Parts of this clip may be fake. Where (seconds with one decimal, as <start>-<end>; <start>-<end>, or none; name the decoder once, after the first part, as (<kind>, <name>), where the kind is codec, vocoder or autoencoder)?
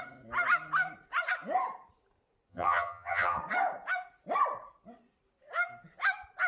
2.5-3.4 (vocoder, HiFi-GAN)